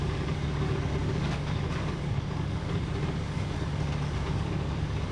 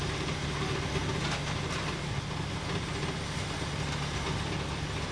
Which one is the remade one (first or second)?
first